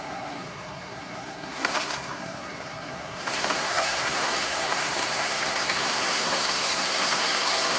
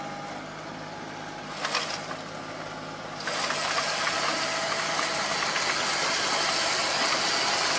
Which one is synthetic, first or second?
first